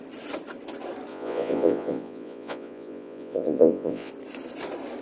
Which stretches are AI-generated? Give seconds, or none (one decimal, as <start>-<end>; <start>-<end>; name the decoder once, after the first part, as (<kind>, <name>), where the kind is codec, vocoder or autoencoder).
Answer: 1.1-4.1 (vocoder, Vocos)